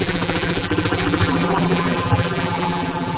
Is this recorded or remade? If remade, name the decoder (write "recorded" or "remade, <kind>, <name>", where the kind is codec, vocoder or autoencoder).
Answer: remade, vocoder, BigVGAN v2